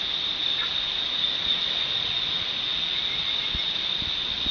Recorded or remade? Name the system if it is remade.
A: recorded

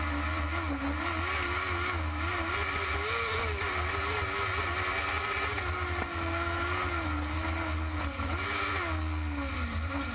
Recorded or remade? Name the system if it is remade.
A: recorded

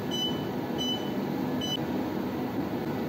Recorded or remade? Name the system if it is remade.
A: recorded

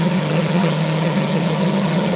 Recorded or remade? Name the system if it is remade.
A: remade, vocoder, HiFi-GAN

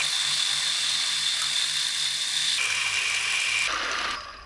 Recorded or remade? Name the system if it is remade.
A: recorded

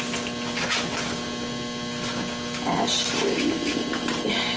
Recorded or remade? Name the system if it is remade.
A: recorded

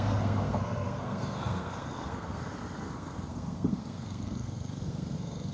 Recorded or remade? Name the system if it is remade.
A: remade, codec, SNAC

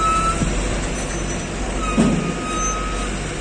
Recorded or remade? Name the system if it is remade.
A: recorded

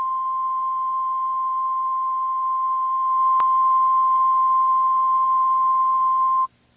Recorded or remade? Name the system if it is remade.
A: recorded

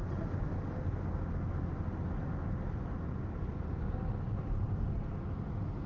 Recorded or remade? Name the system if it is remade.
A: recorded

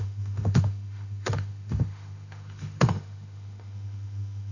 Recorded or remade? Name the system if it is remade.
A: remade, autoencoder, DAC-VAE